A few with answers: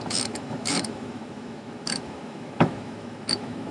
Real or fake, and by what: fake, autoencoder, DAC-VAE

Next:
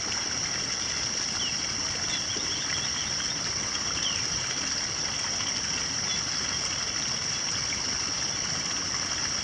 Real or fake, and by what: real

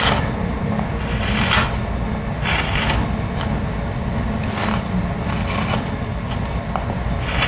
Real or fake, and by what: real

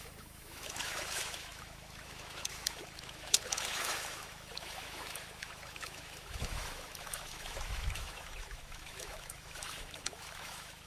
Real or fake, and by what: fake, autoencoder, DAC-VAE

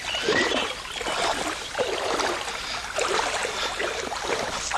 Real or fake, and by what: real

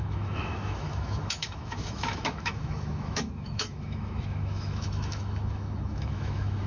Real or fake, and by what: fake, autoencoder, DAC-VAE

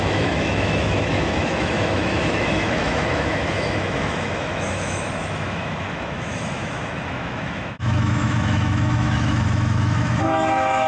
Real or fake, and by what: fake, autoencoder, DAC-VAE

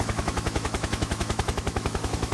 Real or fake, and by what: fake, autoencoder, DAC-VAE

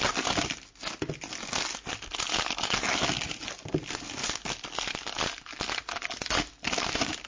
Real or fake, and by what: real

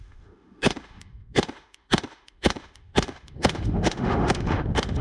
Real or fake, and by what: fake, autoencoder, DAC-VAE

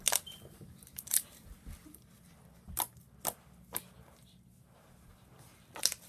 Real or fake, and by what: real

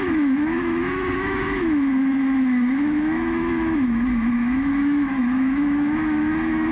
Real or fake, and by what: fake, autoencoder, DAC-VAE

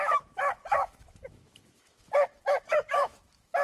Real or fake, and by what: fake, autoencoder, DAC-VAE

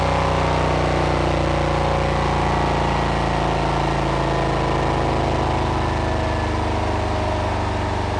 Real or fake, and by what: real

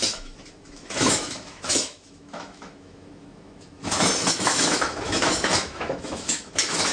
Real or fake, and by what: fake, autoencoder, DAC-VAE